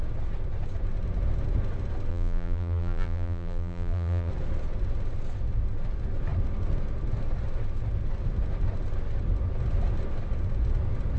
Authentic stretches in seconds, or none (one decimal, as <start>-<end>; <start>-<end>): 0.0-2.1; 4.3-11.2

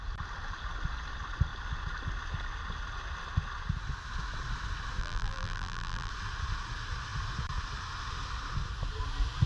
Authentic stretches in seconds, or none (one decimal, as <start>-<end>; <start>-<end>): 0.0-5.0; 6.1-9.5

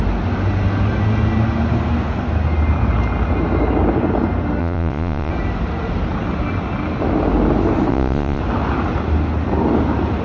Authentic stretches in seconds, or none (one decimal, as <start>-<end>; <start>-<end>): 0.0-4.6; 5.3-7.9; 8.4-10.2

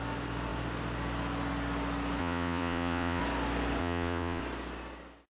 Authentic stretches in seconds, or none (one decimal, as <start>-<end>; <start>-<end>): 0.0-2.2; 3.2-3.8; 4.4-5.3